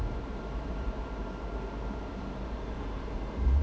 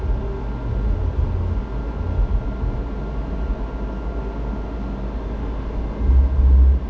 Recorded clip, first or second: second